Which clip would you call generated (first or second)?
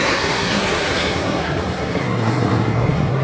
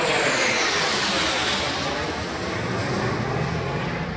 first